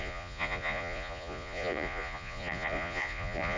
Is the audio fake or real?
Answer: fake